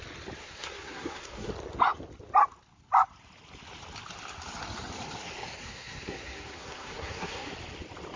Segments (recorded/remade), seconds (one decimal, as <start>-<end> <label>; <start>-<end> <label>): 0.0-0.4 recorded; 0.4-1.5 remade; 1.5-5.6 recorded; 5.6-7.5 remade; 7.5-8.2 recorded